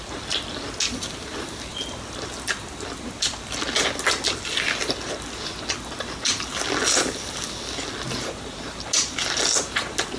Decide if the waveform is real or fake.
real